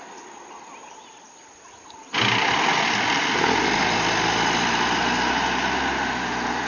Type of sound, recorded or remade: recorded